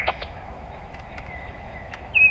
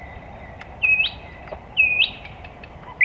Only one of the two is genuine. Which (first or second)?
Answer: second